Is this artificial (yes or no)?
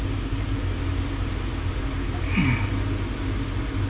no